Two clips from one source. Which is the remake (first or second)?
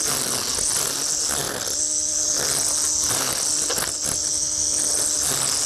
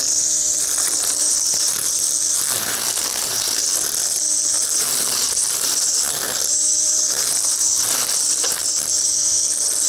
second